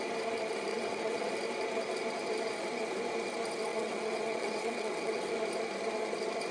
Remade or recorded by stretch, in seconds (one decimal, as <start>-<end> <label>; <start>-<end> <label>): 0.0-0.7 recorded; 0.7-1.3 remade; 1.3-3.7 recorded; 3.7-5.3 remade; 5.3-6.5 recorded